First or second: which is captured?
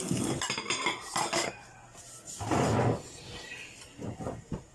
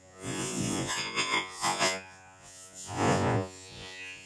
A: first